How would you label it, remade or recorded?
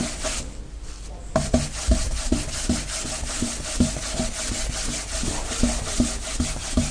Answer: recorded